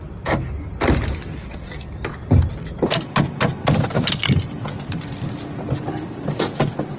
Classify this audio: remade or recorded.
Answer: recorded